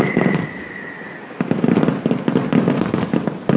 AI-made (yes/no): no